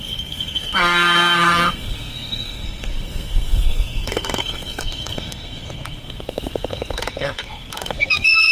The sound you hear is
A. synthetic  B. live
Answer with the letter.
A